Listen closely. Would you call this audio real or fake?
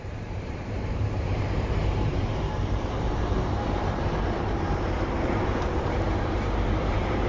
fake